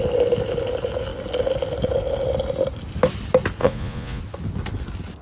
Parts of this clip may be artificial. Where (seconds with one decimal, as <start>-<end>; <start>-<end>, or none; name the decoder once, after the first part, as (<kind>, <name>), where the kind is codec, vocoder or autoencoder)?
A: 3.6-4.2 (vocoder, Vocos)